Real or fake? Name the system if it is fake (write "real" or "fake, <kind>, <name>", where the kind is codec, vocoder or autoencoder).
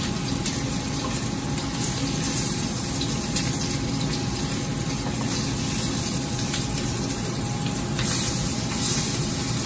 real